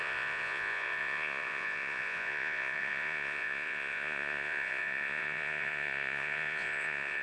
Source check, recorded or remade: remade